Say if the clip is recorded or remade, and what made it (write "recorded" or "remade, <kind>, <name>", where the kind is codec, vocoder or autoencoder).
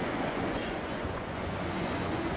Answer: remade, vocoder, Vocos